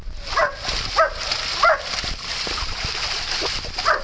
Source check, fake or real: real